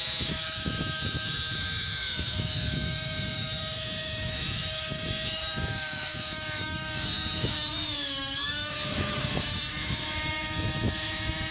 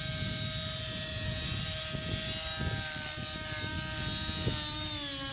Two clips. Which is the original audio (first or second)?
second